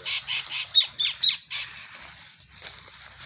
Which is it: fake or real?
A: real